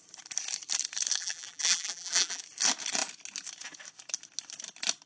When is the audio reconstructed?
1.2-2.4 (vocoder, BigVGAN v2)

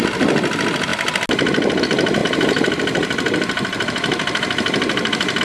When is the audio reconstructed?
2.2-5.4 (vocoder, BigVGAN v2)

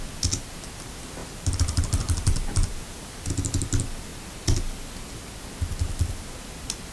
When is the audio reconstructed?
1.2-3.1 (vocoder, BigVGAN v2)